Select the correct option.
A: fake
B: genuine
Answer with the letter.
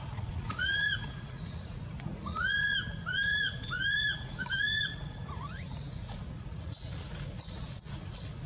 A